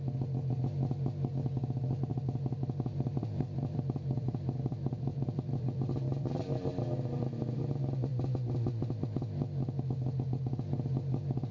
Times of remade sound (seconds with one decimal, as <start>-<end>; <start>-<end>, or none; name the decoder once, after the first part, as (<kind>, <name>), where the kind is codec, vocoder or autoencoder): 2.1-6.3 (vocoder, BigVGAN v2); 6.7-7.6